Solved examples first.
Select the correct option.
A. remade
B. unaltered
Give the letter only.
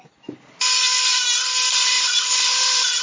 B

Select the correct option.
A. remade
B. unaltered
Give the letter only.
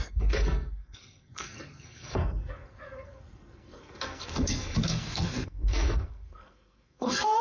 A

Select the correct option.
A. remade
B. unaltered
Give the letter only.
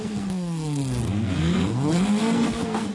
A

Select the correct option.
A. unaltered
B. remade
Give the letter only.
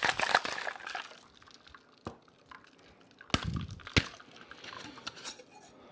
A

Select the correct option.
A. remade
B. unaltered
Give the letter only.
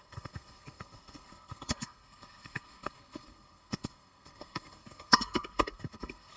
A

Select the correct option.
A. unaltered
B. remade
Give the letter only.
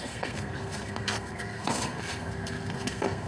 B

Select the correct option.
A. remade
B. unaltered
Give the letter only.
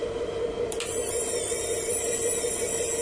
B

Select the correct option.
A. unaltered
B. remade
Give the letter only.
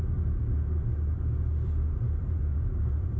A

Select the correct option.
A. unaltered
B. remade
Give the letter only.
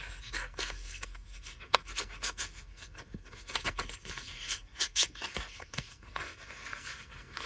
B